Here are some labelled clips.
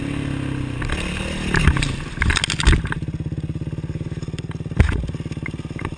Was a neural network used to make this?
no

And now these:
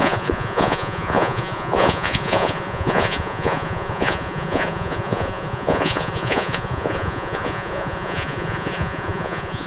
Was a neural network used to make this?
yes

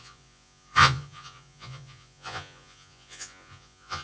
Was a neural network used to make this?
yes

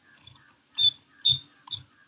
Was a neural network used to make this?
no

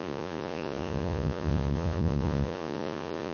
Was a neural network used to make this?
yes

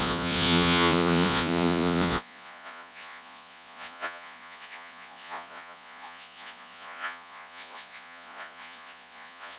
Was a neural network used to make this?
yes